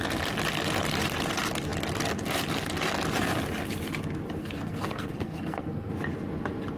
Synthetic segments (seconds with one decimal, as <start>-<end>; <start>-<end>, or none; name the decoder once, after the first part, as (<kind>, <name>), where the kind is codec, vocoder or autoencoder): 4.4-5.9 (codec, SNAC)